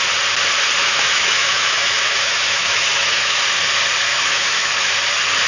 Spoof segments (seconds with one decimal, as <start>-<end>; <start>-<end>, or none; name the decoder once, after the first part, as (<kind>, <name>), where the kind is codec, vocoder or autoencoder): 0.8-3.4 (autoencoder, DAC-VAE); 4.1-4.9